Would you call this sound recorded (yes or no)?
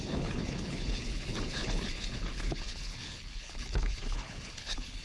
no